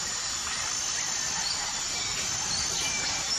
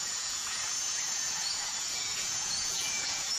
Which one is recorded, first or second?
first